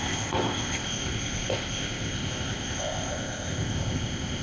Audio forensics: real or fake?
fake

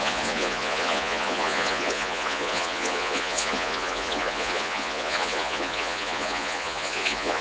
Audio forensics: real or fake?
fake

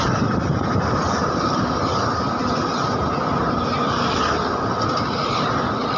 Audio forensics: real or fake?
real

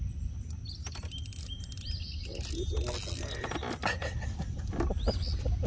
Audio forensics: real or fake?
real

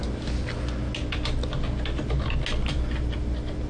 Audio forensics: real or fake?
real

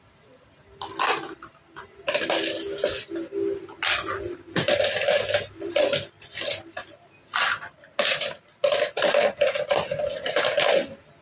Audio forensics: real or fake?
real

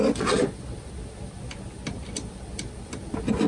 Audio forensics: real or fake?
real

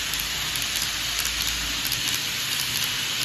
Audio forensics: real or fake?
real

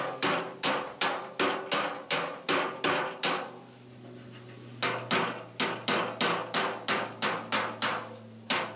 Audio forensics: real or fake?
real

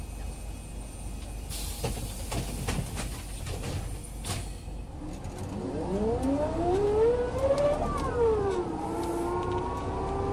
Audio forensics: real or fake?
real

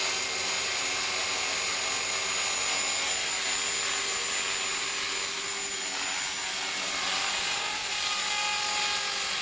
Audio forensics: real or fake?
real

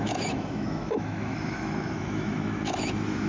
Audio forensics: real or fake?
fake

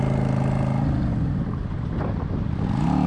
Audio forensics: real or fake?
real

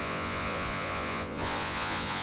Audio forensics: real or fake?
fake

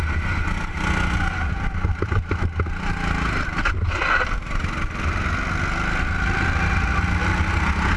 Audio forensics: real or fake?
real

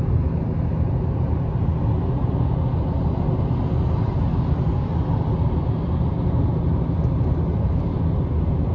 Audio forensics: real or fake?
real